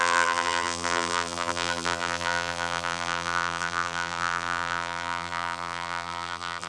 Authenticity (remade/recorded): remade